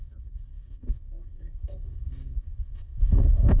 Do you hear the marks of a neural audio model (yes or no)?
yes